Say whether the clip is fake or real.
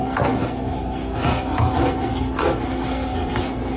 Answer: fake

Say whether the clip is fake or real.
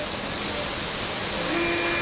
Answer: real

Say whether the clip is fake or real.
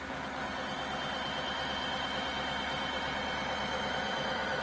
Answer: real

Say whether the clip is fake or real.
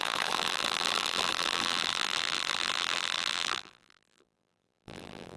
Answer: fake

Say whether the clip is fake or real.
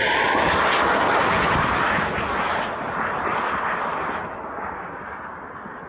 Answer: real